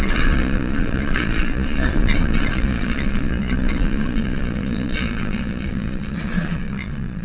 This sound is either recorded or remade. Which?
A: remade